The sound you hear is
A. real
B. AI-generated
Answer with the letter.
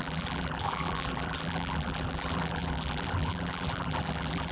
B